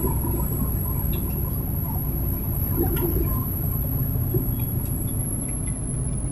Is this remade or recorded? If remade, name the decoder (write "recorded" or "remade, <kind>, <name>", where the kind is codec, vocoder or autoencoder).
recorded